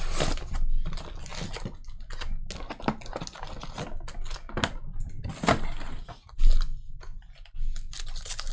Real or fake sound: real